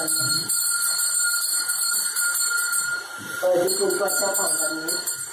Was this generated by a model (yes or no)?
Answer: yes